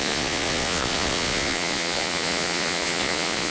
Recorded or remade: remade